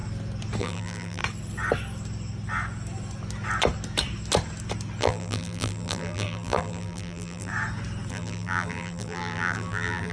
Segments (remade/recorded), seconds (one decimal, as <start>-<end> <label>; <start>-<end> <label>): 0.0-0.6 recorded; 0.6-1.2 remade; 1.2-5.0 recorded; 5.0-7.5 remade; 7.5-8.1 recorded; 8.1-10.1 remade